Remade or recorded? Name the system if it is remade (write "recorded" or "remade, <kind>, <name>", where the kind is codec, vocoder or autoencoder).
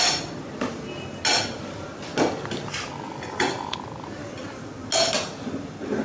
recorded